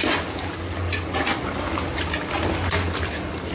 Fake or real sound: real